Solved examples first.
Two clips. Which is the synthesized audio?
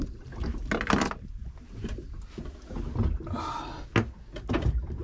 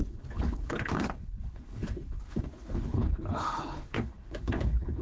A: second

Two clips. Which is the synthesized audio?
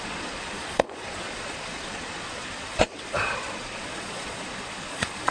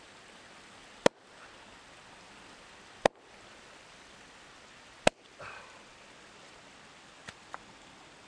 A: first